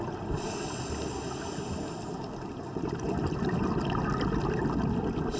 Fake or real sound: real